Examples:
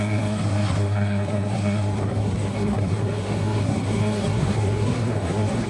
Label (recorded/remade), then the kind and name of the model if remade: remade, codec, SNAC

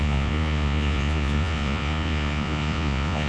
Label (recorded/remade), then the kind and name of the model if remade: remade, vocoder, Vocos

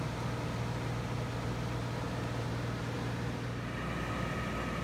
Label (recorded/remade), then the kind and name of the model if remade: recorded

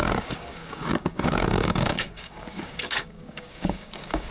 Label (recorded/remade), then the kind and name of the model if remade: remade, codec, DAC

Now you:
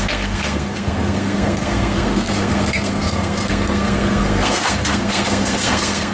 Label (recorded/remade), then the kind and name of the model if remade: remade, codec, SNAC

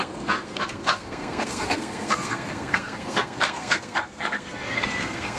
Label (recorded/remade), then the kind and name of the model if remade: remade, codec, SNAC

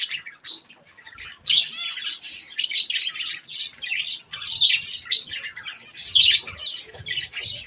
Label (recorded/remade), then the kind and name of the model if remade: recorded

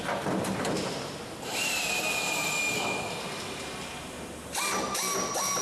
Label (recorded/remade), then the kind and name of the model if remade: recorded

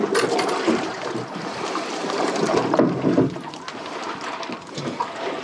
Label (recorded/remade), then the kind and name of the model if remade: remade, vocoder, BigVGAN v2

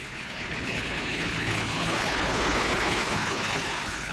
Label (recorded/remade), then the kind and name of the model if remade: remade, codec, HILCodec